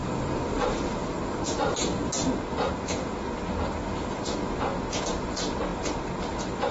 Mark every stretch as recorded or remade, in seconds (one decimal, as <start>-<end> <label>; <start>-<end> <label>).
0.0-2.1 remade; 2.1-6.7 recorded